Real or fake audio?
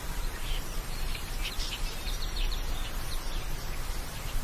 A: fake